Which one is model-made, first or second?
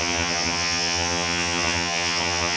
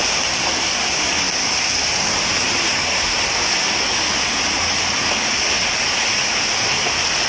first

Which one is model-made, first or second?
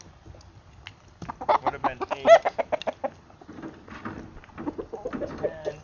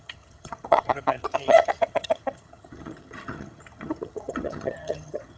second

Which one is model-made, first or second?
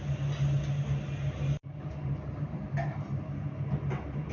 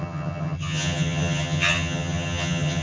second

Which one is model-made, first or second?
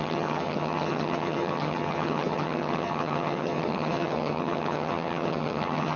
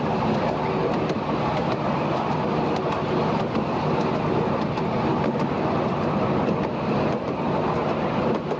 first